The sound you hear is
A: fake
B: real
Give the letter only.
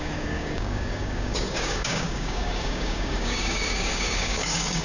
A